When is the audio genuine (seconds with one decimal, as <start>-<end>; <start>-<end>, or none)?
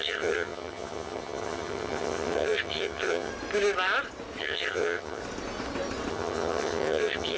3.3-4.4; 5.2-6.1